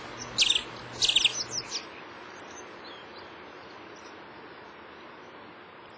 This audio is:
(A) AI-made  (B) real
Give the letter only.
B